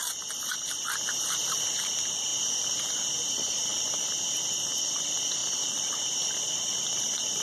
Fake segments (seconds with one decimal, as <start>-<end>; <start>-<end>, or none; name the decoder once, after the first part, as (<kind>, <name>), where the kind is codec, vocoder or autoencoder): 0.0-2.3 (vocoder, BigVGAN v2); 3.0-3.7; 4.5-7.4